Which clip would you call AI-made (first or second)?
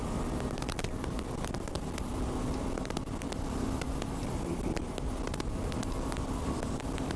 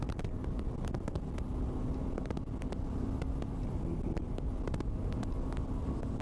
first